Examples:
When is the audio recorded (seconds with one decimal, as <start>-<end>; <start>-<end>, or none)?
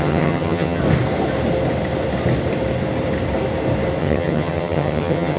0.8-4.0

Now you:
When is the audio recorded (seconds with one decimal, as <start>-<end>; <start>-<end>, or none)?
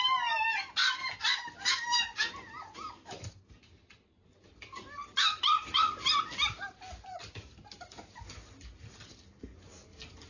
0.0-10.3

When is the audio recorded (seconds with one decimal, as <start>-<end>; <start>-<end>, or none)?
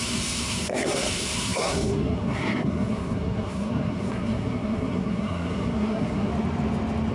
6.3-7.1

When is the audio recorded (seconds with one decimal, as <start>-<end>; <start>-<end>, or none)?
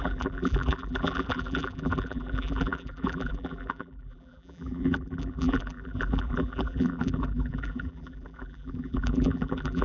none